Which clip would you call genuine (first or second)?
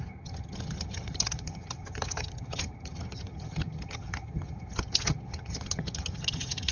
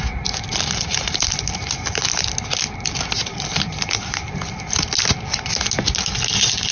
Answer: second